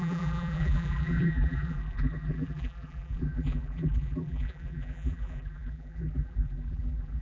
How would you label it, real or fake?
fake